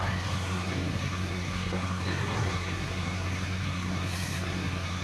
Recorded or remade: remade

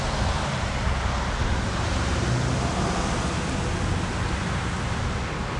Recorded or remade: recorded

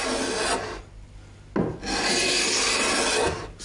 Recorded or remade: recorded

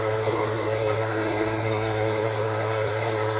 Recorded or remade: remade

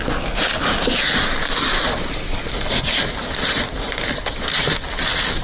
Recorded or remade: recorded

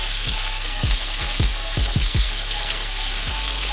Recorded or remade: remade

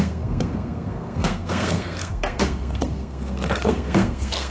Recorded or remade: remade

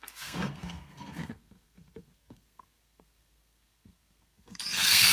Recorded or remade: remade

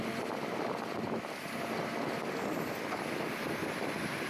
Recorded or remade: recorded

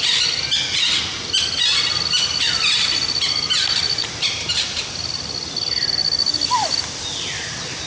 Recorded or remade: recorded